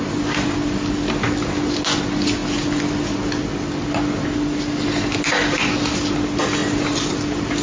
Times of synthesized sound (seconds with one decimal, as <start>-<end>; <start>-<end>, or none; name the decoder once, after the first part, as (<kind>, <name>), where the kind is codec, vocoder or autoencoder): none